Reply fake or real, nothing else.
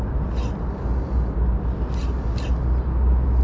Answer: real